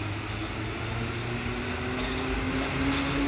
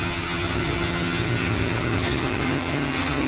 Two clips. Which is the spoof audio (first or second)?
second